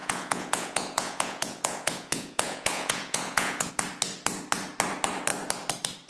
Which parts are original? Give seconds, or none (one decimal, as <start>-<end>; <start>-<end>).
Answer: 3.7-6.1